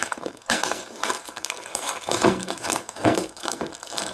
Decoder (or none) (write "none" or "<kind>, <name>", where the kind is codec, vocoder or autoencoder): codec, SNAC